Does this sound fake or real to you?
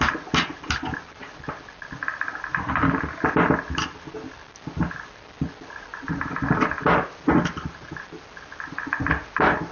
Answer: real